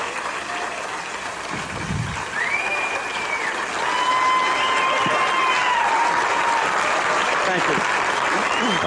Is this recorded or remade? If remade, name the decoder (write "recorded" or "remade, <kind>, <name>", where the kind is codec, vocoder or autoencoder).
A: recorded